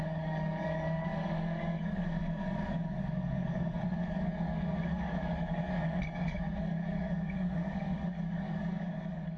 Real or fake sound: fake